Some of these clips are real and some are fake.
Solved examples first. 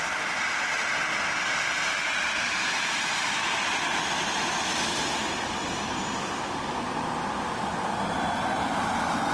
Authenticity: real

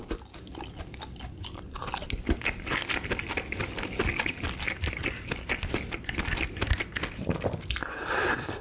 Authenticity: real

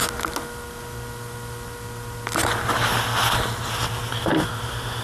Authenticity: real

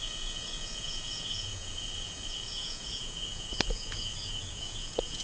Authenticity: fake